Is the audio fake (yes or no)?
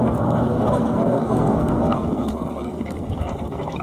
yes